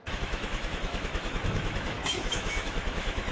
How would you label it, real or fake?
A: fake